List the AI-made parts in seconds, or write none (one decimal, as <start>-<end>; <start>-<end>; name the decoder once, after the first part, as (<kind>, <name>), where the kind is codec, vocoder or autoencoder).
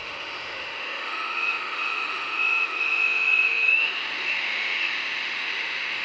0.0-6.0 (autoencoder, DAC-VAE)